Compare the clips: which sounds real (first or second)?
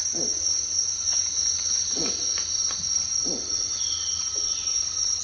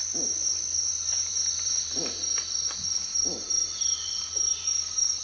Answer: second